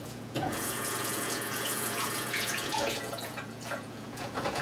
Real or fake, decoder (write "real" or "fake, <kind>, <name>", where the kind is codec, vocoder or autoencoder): fake, vocoder, Vocos